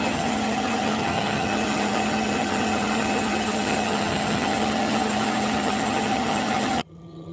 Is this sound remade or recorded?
remade